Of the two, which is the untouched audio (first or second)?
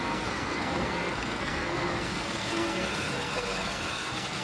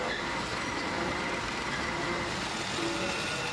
second